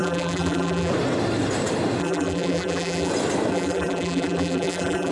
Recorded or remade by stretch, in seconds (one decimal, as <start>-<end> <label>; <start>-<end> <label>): 0.0-0.9 remade; 0.9-2.0 recorded; 2.0-3.1 remade; 3.1-3.5 recorded; 3.5-5.1 remade